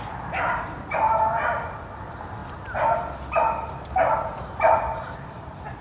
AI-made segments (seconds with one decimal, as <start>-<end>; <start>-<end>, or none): none